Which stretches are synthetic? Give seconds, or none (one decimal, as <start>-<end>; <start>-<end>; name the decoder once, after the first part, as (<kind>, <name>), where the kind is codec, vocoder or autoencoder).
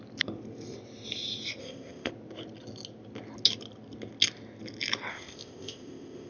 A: 1.6-2.1 (codec, ZipCodec); 5.1-6.3